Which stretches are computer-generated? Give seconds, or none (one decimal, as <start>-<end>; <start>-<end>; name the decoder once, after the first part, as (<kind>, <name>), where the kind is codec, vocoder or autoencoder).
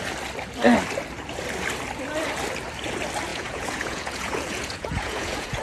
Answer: 3.3-5.6 (vocoder, Vocos)